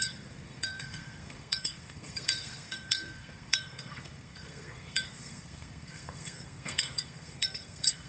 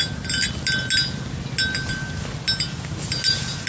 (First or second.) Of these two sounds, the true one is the second